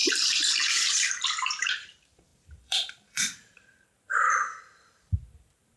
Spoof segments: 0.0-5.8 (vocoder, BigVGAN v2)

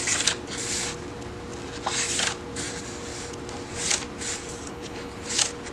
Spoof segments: 4.7-5.3 (codec, HILCodec)

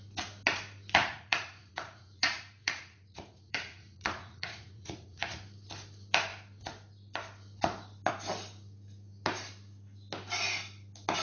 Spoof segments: 1.0-5.3 (vocoder, Vocos)

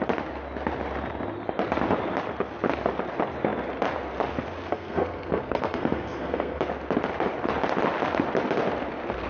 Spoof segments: 4.7-6.6 (codec, SNAC)

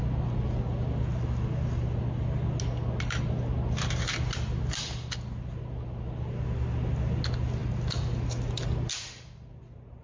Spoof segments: none

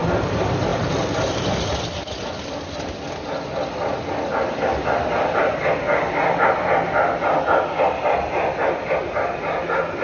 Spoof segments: none